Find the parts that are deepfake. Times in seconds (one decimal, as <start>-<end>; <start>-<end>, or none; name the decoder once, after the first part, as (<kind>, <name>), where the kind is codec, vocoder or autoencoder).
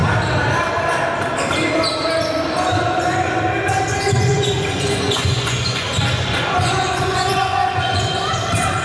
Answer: 3.9-8.0 (vocoder, Vocos)